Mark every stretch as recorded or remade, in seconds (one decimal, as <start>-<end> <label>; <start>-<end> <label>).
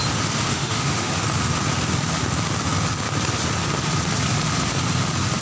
0.0-0.5 recorded; 0.5-1.1 remade; 1.1-5.4 recorded